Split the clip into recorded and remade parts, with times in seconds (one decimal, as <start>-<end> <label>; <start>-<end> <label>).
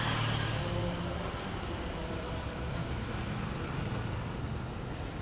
0.0-5.2 recorded